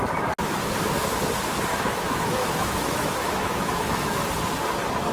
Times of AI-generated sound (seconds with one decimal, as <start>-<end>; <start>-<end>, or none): 1.7-4.3